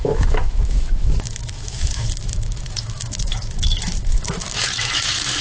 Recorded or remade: remade